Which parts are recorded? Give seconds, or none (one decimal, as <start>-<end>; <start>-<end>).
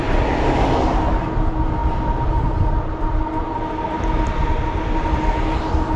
0.0-6.0